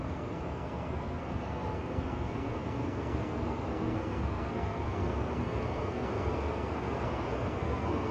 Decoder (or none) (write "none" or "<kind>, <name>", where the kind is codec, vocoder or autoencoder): codec, SNAC